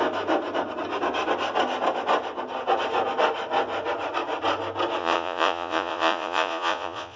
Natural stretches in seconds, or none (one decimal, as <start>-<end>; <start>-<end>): 0.0-5.0